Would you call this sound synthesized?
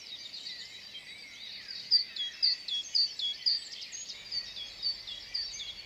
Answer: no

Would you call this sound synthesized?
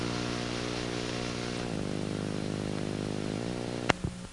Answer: no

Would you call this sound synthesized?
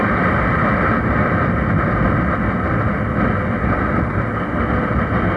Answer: no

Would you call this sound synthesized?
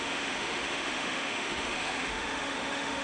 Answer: yes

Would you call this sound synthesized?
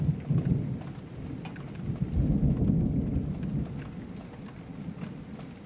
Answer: no